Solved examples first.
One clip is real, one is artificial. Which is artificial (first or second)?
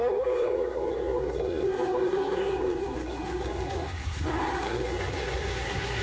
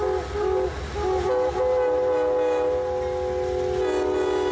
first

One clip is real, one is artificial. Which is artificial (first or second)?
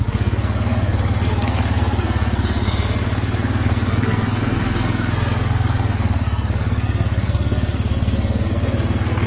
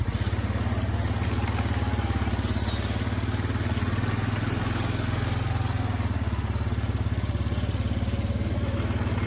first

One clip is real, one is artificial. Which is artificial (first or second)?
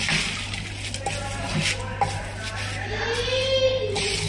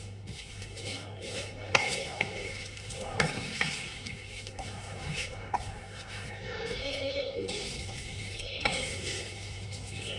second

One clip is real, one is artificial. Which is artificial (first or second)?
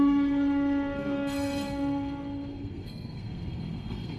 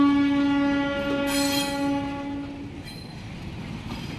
first